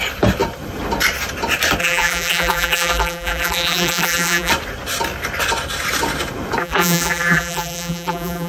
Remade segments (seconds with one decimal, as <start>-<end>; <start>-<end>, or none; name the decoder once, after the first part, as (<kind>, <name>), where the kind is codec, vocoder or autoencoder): 1.8-4.5 (vocoder, BigVGAN v2); 6.6-8.5